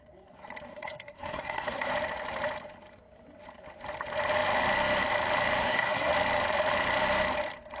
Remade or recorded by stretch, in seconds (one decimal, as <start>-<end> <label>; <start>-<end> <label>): 0.0-0.7 recorded; 0.7-1.9 remade; 1.9-5.6 recorded; 5.6-6.1 remade; 6.1-7.8 recorded